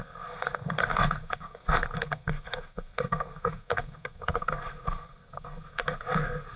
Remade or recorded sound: remade